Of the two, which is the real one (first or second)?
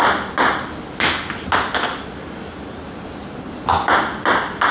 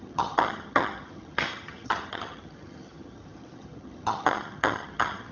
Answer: first